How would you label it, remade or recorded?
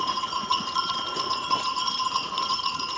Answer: remade